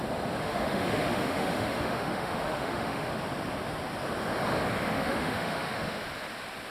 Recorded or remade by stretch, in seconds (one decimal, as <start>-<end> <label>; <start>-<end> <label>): 0.0-0.4 recorded; 0.4-3.1 remade; 3.1-4.9 recorded; 4.9-6.0 remade; 6.0-6.7 recorded